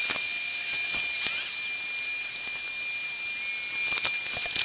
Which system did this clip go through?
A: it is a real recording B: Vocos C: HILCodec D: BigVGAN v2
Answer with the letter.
A